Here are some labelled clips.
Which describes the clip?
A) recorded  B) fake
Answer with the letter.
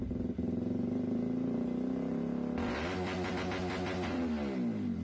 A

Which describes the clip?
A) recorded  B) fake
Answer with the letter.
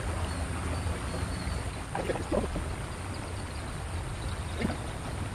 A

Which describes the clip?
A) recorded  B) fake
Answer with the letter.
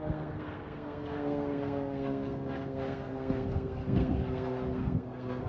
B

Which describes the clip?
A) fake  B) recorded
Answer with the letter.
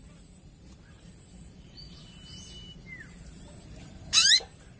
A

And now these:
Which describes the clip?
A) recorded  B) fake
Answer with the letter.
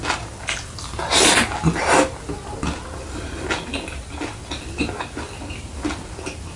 A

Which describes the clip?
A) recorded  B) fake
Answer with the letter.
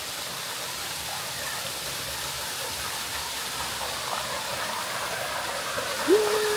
A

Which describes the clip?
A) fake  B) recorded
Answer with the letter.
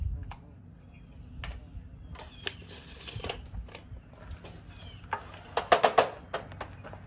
B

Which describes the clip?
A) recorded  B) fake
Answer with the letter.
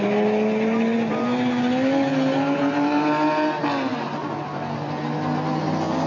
A